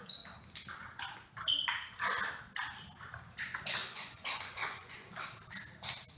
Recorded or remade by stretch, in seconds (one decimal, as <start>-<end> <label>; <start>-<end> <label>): 0.0-3.8 recorded; 3.8-5.1 remade; 5.1-6.2 recorded